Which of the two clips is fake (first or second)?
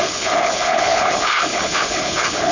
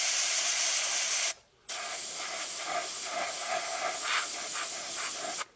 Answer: first